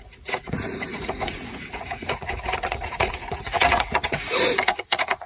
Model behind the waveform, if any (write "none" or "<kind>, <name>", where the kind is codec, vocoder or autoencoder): vocoder, Vocos